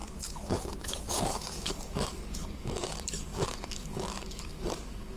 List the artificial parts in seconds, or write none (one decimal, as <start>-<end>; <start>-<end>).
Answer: 0.0-5.2